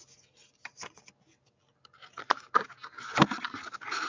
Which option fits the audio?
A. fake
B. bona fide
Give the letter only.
B